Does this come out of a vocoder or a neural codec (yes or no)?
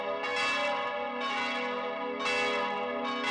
no